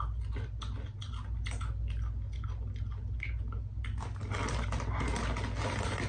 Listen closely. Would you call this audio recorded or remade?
recorded